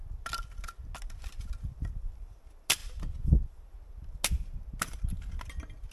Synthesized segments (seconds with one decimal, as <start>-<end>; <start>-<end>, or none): none